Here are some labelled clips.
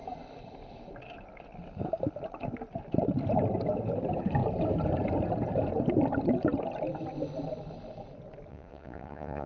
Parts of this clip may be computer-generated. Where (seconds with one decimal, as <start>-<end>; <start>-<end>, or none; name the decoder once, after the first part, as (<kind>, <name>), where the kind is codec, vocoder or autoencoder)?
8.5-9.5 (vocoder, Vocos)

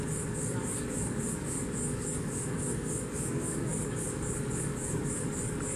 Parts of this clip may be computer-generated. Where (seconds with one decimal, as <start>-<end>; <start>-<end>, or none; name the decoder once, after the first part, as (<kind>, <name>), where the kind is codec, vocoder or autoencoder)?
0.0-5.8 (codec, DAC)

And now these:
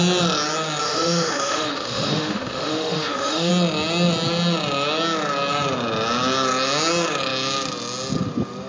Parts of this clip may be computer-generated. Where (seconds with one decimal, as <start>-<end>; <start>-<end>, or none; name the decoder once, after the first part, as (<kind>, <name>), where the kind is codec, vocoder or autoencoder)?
0.8-3.5 (autoencoder, DAC-VAE)

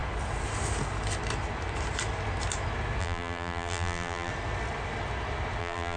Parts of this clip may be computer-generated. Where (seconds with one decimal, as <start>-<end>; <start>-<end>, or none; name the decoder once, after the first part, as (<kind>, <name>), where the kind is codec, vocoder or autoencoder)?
3.0-4.3 (vocoder, BigVGAN v2); 5.6-6.0